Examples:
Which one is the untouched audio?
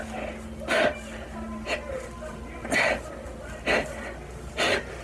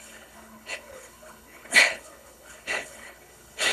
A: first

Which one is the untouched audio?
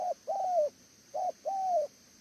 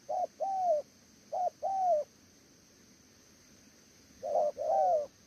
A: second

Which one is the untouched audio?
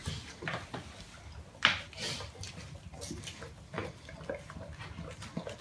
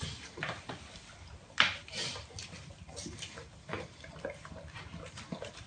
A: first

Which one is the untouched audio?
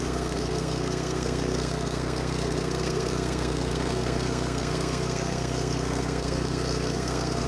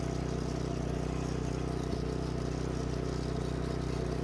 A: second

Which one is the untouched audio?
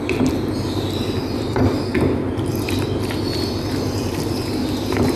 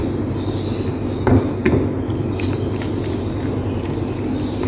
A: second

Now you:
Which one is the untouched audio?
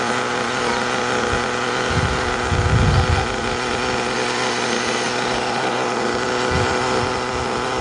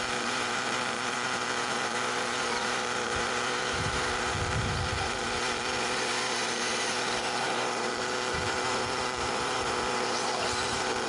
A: first